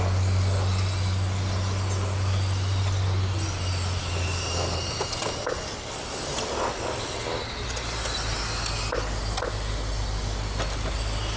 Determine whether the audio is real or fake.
real